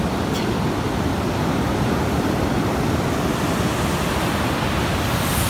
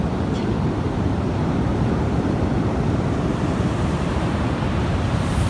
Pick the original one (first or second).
first